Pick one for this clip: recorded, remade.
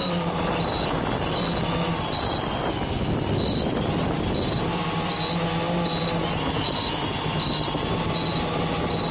recorded